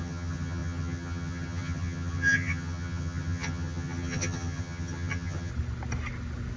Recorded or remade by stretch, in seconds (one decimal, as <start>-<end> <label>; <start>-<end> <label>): 0.0-5.5 remade; 5.5-6.6 recorded